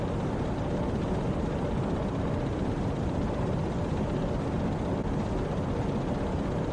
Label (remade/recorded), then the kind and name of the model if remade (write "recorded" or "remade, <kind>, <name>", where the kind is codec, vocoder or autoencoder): recorded